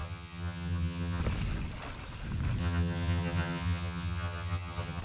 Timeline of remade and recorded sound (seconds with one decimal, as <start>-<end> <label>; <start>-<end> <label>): 0.0-1.2 remade; 1.2-2.6 recorded; 2.6-5.0 remade